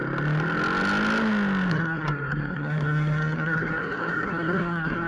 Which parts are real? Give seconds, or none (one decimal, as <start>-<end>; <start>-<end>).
0.0-1.7